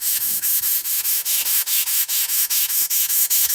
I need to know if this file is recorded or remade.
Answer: remade